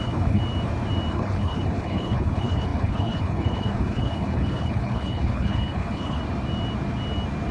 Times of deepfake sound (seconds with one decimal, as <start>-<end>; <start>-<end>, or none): 0.0-0.4; 1.1-6.2